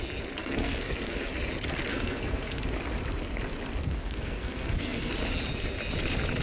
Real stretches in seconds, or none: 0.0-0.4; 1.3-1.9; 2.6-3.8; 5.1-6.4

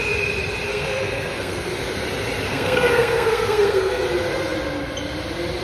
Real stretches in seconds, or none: 0.0-0.7; 1.7-2.5; 4.0-5.6